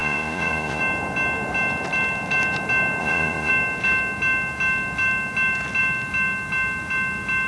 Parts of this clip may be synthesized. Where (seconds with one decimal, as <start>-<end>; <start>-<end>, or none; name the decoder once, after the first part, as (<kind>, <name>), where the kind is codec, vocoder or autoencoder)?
0.0-0.8 (vocoder, Vocos); 3.0-3.5